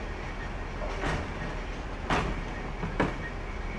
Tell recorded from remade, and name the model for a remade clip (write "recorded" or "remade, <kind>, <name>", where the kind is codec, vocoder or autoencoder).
recorded